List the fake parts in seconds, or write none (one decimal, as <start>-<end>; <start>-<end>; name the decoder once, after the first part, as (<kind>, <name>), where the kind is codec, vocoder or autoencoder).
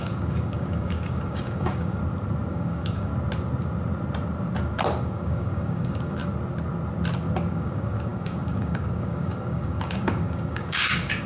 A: 0.0-2.0 (codec, DAC); 2.5-3.1; 5.0-6.2; 7.5-11.3